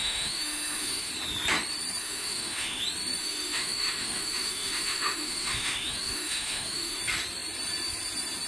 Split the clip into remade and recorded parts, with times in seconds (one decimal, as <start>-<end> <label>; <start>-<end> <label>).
0.0-1.1 remade; 1.1-2.0 recorded; 2.0-2.8 remade; 2.8-3.2 recorded; 3.2-7.0 remade; 7.0-8.5 recorded